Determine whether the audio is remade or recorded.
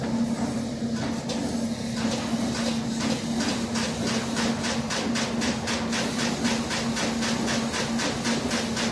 recorded